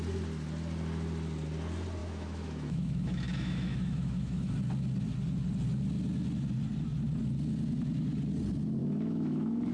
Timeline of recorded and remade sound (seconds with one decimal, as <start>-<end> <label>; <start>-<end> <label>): 0.0-2.0 recorded; 2.0-4.5 remade; 4.5-8.8 recorded; 8.8-9.7 remade